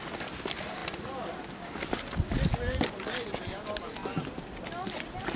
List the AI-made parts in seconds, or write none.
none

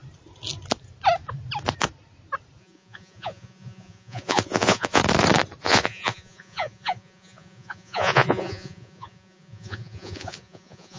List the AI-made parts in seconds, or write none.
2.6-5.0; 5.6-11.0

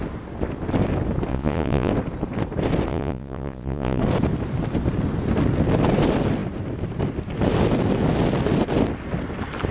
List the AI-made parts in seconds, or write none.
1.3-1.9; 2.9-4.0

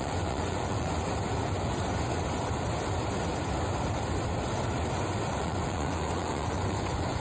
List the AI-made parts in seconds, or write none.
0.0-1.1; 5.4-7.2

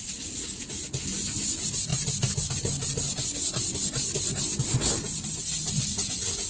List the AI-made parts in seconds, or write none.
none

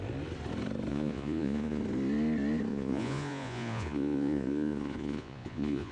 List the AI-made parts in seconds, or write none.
0.9-1.8; 2.7-5.9